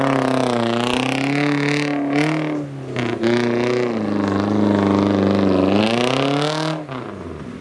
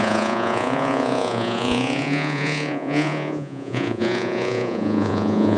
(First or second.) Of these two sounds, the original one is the first